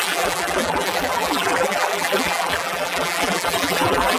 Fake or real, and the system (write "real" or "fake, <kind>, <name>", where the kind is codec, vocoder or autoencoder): fake, vocoder, BigVGAN v2